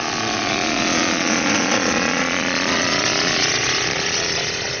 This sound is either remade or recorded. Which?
remade